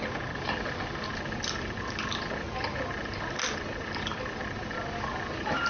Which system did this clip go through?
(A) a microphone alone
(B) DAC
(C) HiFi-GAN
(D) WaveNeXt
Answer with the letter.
A